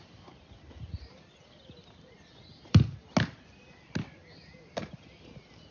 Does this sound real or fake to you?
real